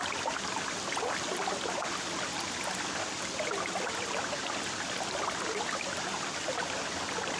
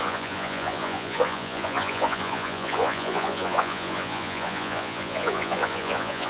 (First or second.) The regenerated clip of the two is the second